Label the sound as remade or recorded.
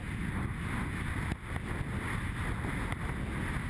recorded